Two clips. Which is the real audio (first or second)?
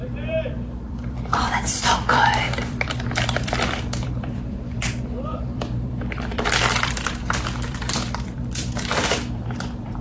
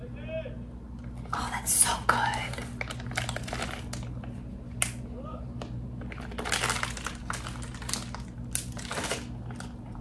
second